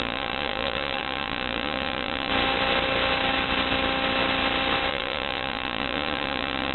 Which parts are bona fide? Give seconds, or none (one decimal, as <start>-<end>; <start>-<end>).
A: 2.3-4.9

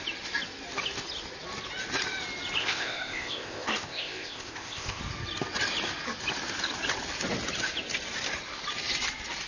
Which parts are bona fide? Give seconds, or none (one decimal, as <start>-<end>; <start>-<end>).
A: 0.0-2.6; 5.0-9.5

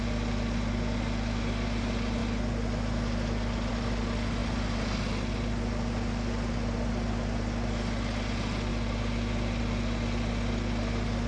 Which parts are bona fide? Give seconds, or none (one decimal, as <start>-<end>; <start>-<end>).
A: 0.0-11.3

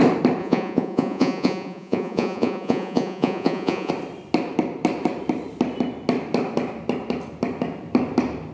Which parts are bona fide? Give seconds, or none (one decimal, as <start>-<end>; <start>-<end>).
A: 0.0-0.4; 3.9-8.5

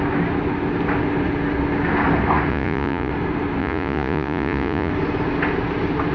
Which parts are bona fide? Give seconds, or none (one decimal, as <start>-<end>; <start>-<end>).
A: 0.0-2.5; 3.1-3.6; 4.9-6.1

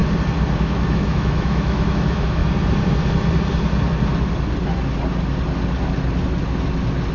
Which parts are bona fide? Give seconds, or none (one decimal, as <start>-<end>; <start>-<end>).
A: 0.0-0.6; 2.4-7.1

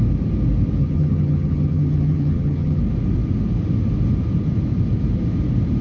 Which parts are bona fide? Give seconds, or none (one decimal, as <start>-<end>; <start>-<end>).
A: 0.0-0.8; 2.8-5.8

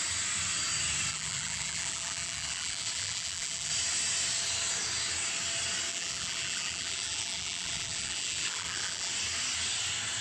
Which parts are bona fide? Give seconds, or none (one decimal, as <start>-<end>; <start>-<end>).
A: 0.0-1.1; 3.7-5.9; 9.1-10.2